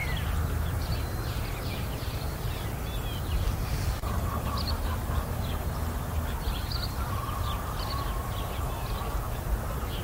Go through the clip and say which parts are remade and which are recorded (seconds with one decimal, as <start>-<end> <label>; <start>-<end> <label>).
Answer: 0.0-5.2 remade; 5.2-10.0 recorded